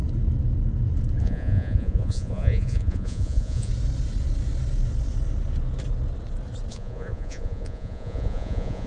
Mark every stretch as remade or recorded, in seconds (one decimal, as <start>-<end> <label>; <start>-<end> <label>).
0.0-1.2 recorded; 1.2-3.7 remade; 3.7-6.7 recorded; 6.7-8.9 remade